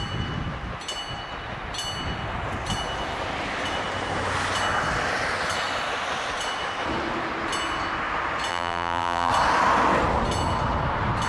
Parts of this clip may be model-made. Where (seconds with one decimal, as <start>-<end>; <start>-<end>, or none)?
8.5-9.3